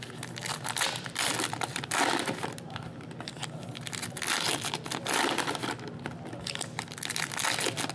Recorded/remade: recorded